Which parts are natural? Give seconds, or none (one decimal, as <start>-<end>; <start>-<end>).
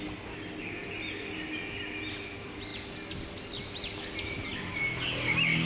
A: 0.0-5.7